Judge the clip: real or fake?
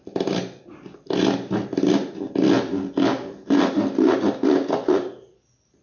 real